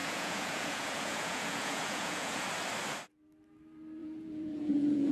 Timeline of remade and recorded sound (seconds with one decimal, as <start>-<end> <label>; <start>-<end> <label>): 0.0-2.5 remade; 2.5-4.0 recorded; 4.0-5.1 remade